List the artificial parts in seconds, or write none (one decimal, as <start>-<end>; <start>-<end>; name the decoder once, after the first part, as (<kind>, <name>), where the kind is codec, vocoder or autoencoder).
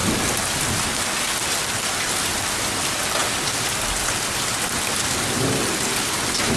none